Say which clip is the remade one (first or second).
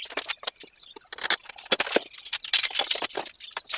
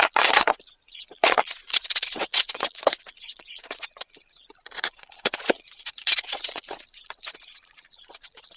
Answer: second